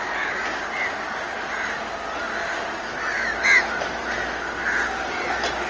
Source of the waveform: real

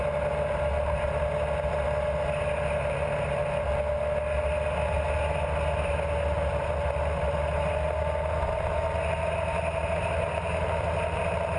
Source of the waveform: real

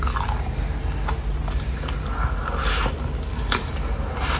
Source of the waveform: real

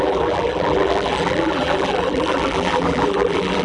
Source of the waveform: fake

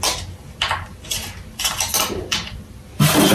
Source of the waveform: real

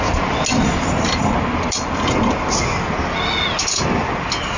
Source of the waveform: real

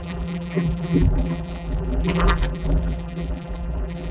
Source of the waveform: fake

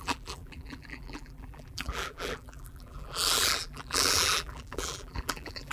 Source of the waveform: fake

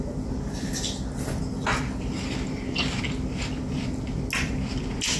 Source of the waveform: real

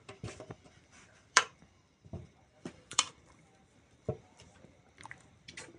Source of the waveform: fake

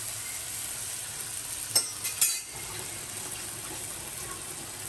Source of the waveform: real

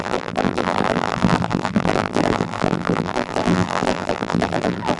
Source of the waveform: fake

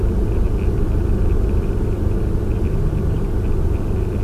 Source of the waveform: real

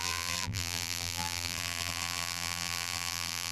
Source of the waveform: fake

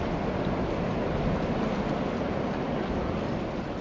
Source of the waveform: real